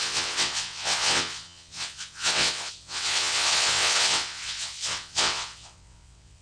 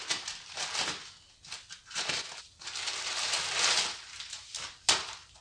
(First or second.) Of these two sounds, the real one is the second